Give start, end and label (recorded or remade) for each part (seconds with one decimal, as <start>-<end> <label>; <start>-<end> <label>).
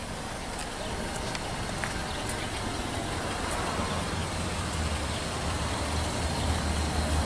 0.0-4.2 recorded; 4.2-5.8 remade; 5.8-7.3 recorded